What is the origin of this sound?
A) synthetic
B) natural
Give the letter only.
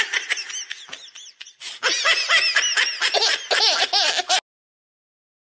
B